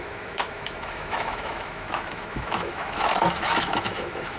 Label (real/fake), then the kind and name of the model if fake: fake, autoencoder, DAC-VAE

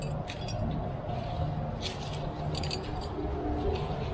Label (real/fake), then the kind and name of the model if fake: real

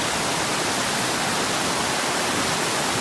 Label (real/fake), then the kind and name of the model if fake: real